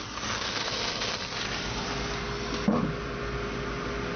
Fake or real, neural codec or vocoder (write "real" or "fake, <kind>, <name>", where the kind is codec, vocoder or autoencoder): real